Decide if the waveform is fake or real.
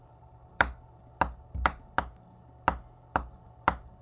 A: real